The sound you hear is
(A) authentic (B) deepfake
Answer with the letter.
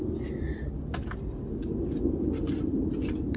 A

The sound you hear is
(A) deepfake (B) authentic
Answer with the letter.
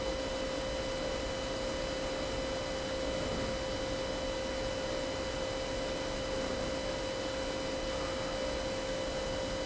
B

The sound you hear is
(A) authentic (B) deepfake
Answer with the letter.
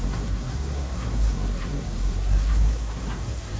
B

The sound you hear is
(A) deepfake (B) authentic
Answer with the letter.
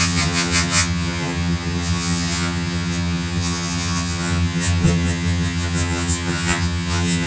A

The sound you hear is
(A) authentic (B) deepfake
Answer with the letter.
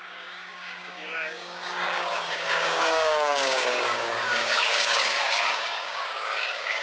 B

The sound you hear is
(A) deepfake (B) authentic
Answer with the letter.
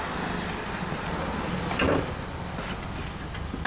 B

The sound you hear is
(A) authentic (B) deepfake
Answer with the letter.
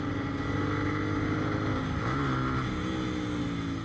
A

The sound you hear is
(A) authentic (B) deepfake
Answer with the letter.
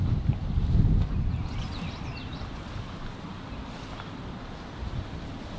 A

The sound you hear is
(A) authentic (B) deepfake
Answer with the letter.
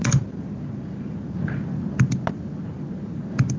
A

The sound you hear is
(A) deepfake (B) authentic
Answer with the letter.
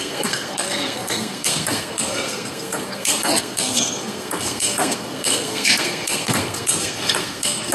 A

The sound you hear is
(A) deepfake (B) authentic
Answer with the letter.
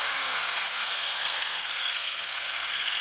A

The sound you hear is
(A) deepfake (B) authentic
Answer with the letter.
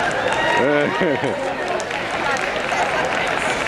B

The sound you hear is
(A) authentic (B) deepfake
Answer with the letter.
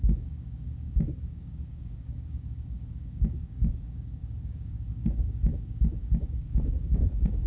B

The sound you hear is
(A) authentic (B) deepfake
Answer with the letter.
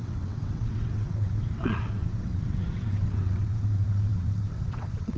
B